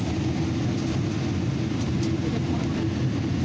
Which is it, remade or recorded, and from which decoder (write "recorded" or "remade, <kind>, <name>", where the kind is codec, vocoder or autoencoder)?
recorded